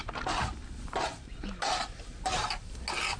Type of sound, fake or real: real